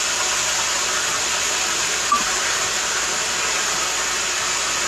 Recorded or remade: recorded